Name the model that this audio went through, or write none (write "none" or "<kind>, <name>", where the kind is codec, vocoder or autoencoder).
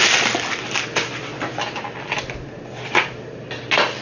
none